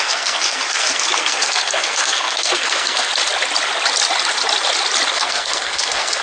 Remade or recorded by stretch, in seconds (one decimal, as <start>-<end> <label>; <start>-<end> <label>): 0.0-3.1 remade; 3.1-5.1 recorded; 5.1-6.2 remade

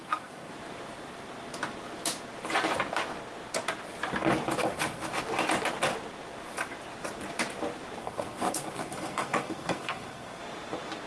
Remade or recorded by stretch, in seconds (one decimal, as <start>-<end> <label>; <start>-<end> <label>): 0.0-0.5 remade; 0.5-4.6 recorded; 4.6-5.1 remade; 5.1-8.0 recorded; 8.0-10.4 remade; 10.4-11.1 recorded

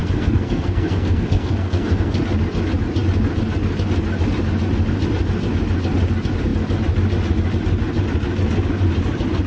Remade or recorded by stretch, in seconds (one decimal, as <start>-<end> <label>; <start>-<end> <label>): 0.0-2.2 remade; 2.2-9.5 recorded

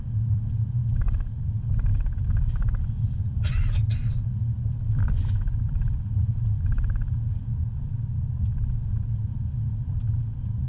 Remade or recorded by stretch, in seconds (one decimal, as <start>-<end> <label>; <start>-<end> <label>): 0.0-10.7 recorded

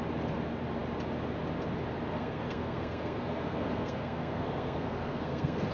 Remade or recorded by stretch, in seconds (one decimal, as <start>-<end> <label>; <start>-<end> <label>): 0.0-2.1 recorded; 2.1-5.7 remade

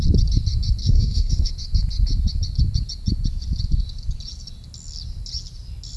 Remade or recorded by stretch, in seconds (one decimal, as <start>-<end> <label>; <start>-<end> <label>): 0.0-0.8 recorded; 0.8-1.5 remade; 1.5-6.0 recorded

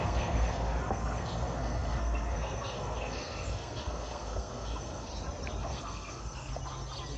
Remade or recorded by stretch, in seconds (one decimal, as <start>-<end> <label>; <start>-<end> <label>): 0.0-5.1 remade; 5.1-5.6 recorded; 5.6-6.5 remade; 6.5-7.2 recorded

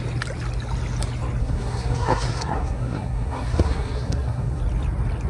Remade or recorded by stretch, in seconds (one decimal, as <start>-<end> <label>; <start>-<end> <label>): 0.0-1.4 recorded; 1.4-4.6 remade; 4.6-5.3 recorded